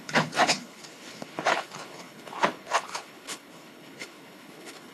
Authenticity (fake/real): fake